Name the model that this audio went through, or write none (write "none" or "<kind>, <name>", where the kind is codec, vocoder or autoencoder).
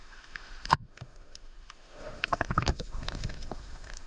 autoencoder, DAC-VAE